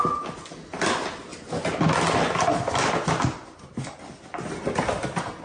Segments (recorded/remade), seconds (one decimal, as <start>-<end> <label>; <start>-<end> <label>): 0.0-5.4 recorded